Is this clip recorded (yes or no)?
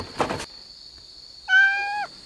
yes